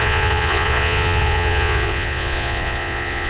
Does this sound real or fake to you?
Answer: fake